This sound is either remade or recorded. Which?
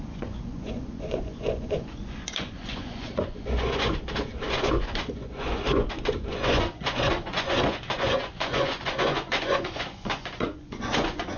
remade